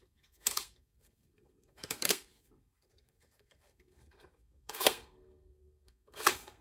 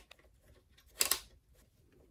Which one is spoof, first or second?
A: first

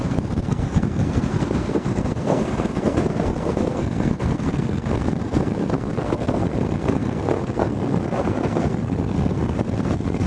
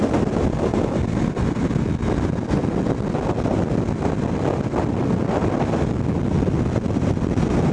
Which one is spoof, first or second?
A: first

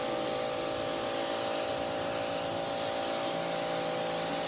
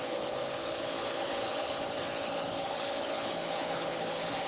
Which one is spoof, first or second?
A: second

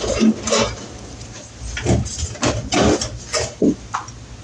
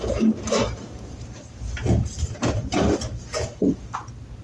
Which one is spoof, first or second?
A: second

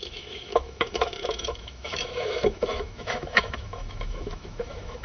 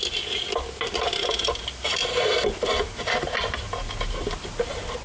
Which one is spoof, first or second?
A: first